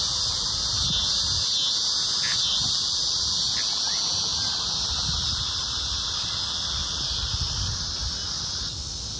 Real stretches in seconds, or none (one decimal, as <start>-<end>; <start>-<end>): 0.0-2.5; 3.4-4.3; 6.3-9.2